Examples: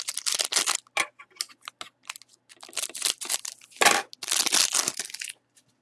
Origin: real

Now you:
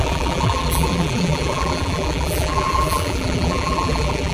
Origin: fake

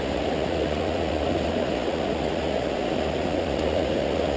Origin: fake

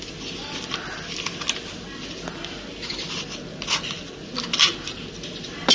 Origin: real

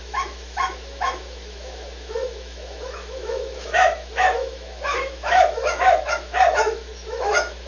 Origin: fake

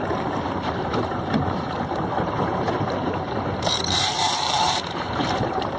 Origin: fake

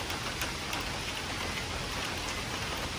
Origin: real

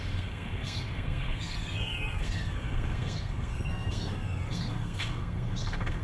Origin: fake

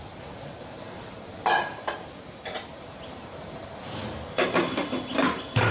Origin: real